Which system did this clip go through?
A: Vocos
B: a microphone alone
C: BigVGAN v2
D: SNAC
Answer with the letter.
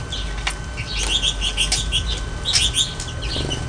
B